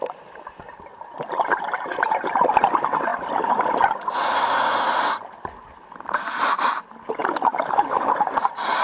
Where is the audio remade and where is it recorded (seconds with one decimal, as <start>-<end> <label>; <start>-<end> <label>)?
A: 0.0-7.2 recorded; 7.2-8.1 remade; 8.1-8.8 recorded